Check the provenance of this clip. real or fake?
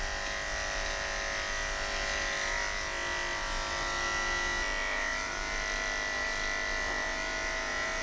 real